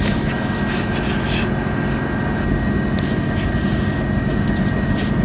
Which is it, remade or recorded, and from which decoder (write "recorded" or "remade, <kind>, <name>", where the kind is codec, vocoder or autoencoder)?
recorded